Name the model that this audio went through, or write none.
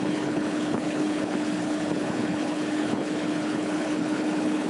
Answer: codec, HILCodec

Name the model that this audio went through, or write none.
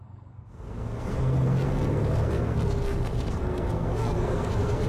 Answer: codec, SNAC